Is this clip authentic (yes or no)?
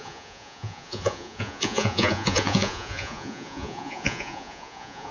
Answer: no